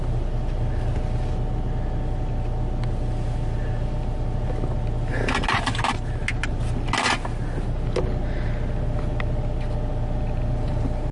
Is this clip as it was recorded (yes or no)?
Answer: yes